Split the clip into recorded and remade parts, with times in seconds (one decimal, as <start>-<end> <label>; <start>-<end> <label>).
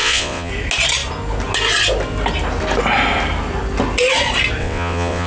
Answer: 0.0-0.5 remade; 0.5-4.6 recorded; 4.6-5.3 remade